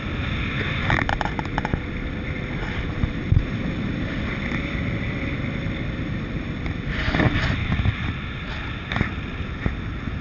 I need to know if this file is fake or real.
real